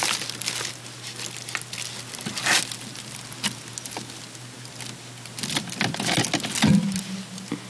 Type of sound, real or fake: real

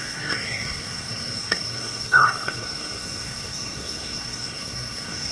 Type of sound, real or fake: fake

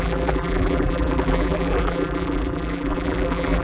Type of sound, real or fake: fake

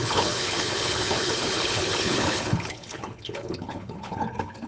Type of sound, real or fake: fake